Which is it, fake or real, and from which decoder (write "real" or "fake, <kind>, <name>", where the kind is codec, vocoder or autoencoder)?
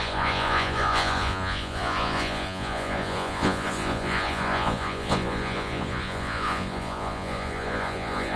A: fake, vocoder, Vocos